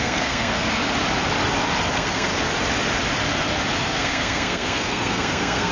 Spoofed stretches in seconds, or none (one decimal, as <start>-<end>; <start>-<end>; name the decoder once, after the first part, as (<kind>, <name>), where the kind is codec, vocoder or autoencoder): 0.0-0.8 (codec, SNAC); 1.9-2.3; 3.7-5.7